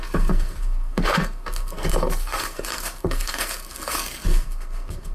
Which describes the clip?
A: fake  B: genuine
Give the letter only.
A